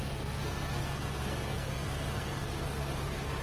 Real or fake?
fake